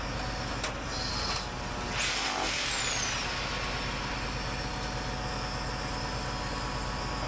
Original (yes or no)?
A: yes